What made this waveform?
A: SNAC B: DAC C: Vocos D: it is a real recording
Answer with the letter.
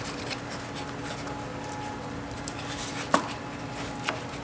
D